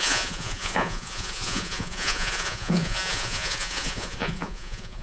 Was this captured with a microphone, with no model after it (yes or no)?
no